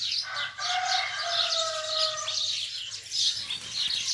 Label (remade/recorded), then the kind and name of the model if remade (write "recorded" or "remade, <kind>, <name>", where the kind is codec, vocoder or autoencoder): recorded